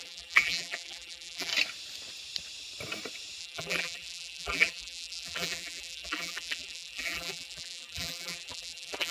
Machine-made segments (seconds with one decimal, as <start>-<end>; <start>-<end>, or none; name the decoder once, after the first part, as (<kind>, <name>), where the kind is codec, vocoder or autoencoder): 0.0-1.5 (vocoder, BigVGAN v2); 3.4-9.1